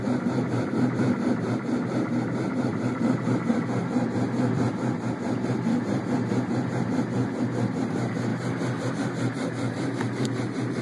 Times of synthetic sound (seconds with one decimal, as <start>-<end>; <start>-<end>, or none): 0.0-8.3; 8.9-10.8